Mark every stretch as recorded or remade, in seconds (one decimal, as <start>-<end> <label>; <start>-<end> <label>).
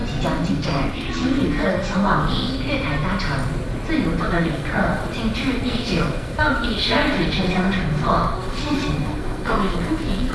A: 0.0-0.5 recorded; 0.5-2.7 remade; 2.7-4.2 recorded; 4.2-5.0 remade; 5.0-5.5 recorded; 5.5-10.3 remade